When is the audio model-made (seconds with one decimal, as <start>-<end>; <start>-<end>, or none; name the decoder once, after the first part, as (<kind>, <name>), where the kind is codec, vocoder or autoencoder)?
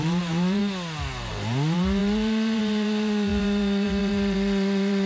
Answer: 0.0-0.6 (vocoder, BigVGAN v2); 1.3-5.1